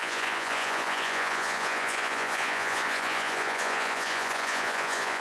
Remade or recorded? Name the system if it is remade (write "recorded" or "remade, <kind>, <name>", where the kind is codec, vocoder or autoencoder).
remade, vocoder, Vocos